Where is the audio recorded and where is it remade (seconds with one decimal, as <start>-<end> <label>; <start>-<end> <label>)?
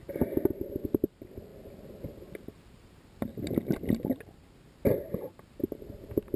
0.0-6.4 recorded